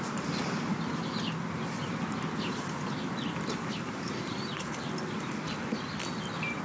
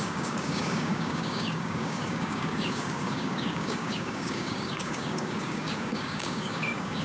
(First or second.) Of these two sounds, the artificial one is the second